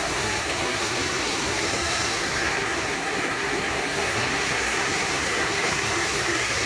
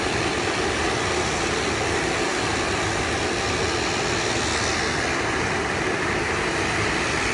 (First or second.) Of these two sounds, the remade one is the first